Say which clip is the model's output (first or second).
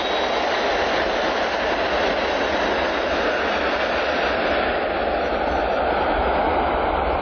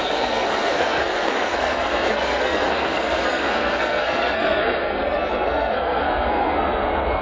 second